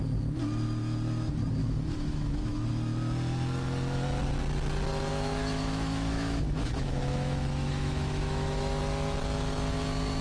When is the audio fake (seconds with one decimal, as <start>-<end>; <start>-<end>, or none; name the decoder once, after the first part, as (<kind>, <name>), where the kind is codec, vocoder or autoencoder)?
1.6-2.7 (autoencoder, DAC-VAE); 5.1-8.8